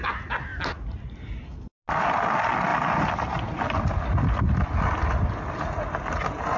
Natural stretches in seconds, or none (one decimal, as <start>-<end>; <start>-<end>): 0.0-6.6